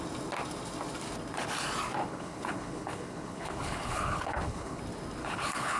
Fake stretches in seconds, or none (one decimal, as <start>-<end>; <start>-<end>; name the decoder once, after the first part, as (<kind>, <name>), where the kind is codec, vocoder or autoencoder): 2.0-4.8 (codec, HILCodec); 5.2-5.8